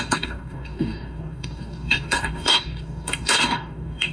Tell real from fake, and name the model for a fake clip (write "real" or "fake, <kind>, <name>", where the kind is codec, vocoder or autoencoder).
fake, codec, DAC